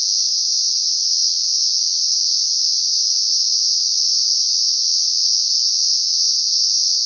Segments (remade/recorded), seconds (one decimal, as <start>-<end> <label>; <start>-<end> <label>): 0.0-7.1 remade